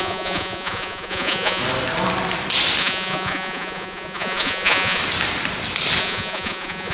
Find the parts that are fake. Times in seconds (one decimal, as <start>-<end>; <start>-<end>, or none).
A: 0.0-1.6; 2.8-5.0; 6.0-6.9